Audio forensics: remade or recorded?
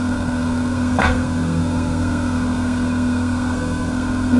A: remade